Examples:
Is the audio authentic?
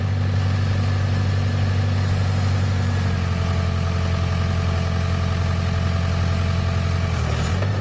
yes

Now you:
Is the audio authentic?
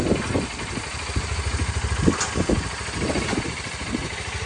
yes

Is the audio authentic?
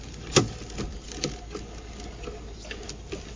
yes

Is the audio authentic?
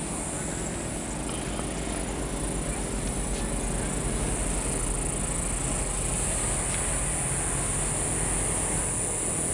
yes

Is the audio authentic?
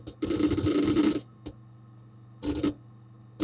yes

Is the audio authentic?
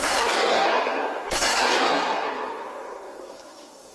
no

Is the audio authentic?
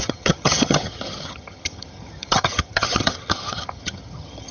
no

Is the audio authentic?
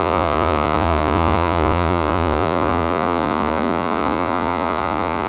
no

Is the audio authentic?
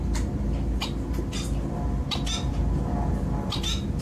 yes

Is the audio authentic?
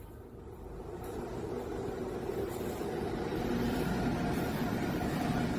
yes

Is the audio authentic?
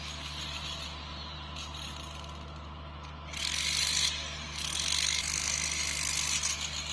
yes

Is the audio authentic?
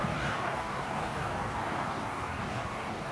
no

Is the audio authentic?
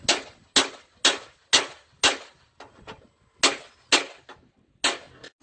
yes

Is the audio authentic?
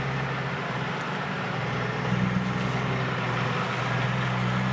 yes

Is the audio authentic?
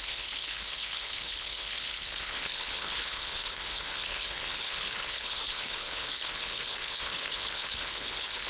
no